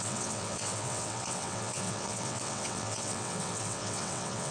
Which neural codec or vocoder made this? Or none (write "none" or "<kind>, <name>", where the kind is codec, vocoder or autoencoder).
vocoder, WaveNeXt